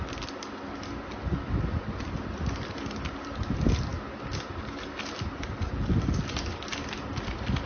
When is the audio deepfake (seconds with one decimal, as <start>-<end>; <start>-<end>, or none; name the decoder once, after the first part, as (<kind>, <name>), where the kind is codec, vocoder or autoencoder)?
none